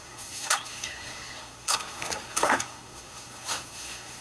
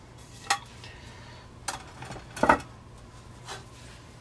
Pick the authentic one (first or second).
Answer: second